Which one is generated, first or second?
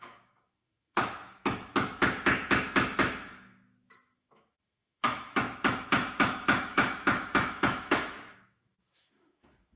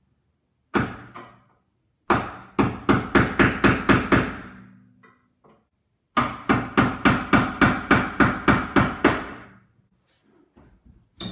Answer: first